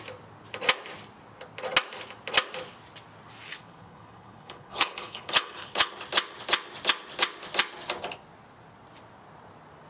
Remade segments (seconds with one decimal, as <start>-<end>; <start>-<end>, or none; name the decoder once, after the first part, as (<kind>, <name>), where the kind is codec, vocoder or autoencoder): 3.5-5.9 (codec, HILCodec)